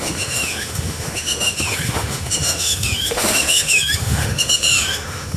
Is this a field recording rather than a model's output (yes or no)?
no